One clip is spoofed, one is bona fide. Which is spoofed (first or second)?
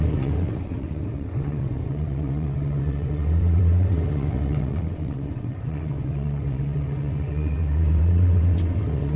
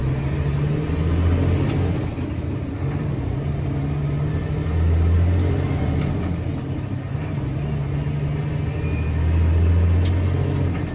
first